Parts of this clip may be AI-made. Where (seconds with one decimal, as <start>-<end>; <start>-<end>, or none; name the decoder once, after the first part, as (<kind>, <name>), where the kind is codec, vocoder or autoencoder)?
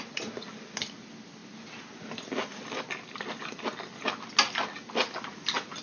none